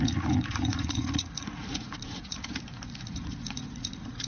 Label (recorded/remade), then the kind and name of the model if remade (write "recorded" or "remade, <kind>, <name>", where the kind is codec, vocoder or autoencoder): remade, vocoder, Vocos